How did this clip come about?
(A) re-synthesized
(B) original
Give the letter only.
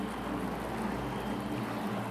B